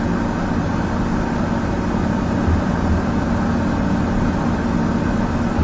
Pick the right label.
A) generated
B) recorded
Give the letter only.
B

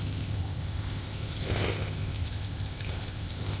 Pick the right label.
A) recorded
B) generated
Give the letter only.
B